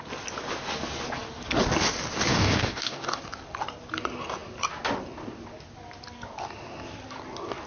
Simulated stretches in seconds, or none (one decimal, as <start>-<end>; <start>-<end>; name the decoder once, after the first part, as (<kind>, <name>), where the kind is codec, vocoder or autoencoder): 2.3-3.2 (codec, DAC)